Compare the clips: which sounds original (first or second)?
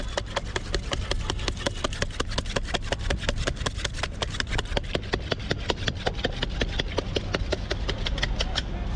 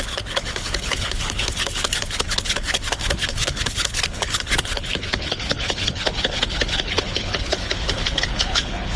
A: first